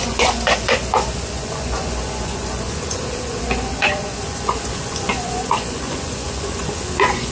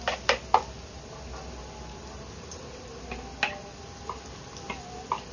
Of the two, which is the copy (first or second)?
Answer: first